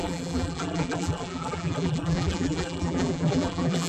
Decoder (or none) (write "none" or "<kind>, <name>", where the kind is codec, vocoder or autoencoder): vocoder, BigVGAN v2